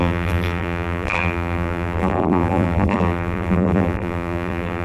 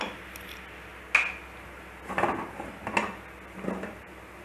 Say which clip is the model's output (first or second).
first